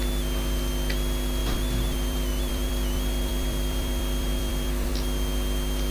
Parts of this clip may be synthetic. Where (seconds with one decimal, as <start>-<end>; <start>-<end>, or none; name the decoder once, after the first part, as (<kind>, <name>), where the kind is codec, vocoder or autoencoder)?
1.4-4.9 (vocoder, BigVGAN v2)